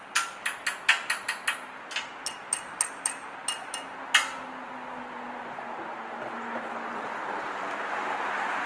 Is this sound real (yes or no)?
yes